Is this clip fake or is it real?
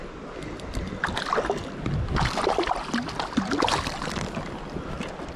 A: real